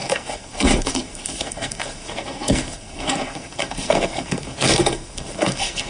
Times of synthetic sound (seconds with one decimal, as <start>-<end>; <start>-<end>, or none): 0.0-5.9